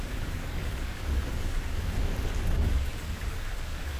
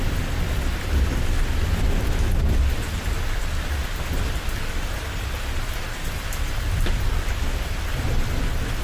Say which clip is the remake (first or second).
first